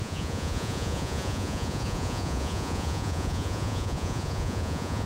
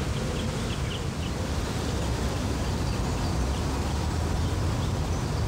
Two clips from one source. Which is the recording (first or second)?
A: second